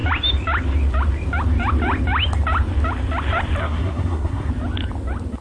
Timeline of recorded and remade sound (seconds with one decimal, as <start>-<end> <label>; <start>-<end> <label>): 0.0-3.6 recorded; 3.6-4.5 remade; 4.5-5.4 recorded